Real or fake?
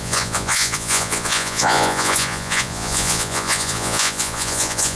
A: fake